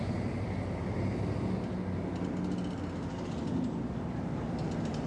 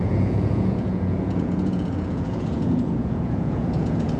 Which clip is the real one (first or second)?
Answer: first